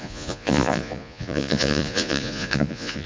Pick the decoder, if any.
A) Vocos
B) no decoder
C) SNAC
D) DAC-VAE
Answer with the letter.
A